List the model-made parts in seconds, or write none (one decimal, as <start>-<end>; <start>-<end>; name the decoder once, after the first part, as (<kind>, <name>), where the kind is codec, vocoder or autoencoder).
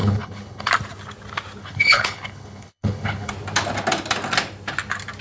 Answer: 0.0-0.7 (codec, HILCodec); 1.6-3.3